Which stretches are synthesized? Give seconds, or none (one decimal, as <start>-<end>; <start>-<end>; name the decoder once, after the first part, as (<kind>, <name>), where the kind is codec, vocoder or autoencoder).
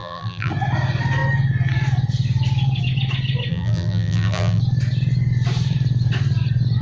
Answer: 0.0-0.5 (vocoder, BigVGAN v2); 3.5-4.6